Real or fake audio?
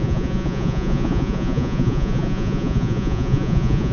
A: fake